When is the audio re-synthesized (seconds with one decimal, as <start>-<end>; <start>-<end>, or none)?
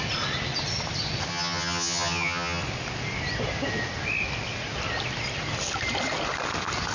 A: 1.3-2.6